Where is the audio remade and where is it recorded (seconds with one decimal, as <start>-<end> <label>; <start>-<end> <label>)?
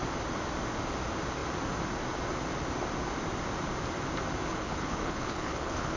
0.0-4.5 recorded; 4.5-6.0 remade